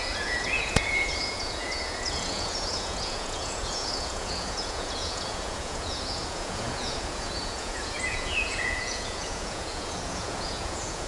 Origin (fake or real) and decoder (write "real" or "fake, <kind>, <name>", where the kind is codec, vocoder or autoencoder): fake, vocoder, Vocos